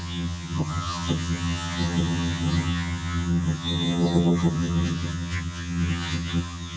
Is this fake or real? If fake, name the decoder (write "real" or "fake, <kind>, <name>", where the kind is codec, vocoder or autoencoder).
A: fake, vocoder, HiFi-GAN